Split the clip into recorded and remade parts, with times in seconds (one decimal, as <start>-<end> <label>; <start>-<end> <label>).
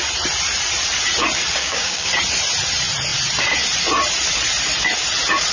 0.0-1.6 recorded; 1.6-2.1 remade; 2.1-5.5 recorded